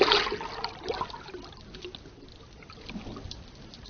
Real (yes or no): yes